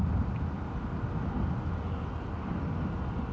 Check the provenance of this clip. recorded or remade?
recorded